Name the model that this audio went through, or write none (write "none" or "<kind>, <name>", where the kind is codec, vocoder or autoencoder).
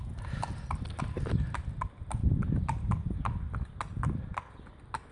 none